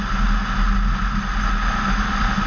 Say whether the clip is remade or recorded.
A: recorded